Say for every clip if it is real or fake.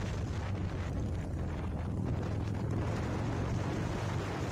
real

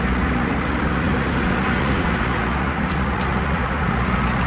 fake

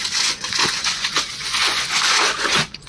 fake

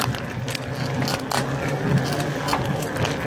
real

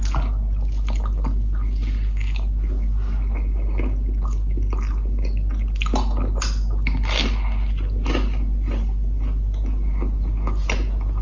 real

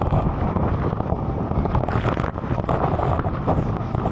real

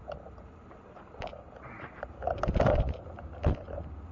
real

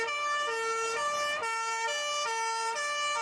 real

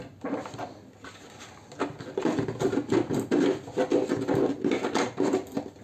real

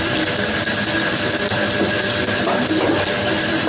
real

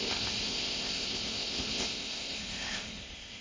fake